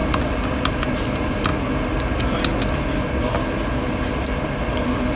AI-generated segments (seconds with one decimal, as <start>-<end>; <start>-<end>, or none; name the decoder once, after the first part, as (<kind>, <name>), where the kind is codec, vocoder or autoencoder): 0.8-1.5 (vocoder, BigVGAN v2); 4.6-5.2